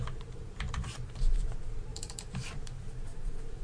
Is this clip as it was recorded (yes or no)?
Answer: no